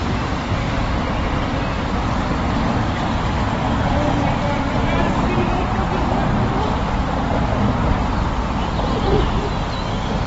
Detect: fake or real real